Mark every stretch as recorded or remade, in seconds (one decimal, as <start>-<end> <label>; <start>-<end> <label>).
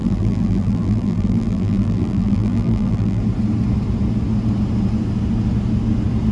0.0-3.2 remade; 3.2-6.3 recorded